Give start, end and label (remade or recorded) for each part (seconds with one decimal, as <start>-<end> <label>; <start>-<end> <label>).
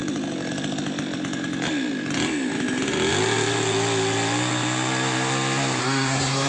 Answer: 0.0-5.8 recorded; 5.8-6.5 remade